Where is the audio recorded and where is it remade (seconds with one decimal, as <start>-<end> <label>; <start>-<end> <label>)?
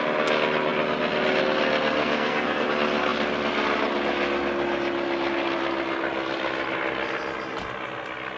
0.0-2.0 recorded; 2.0-2.7 remade; 2.7-8.4 recorded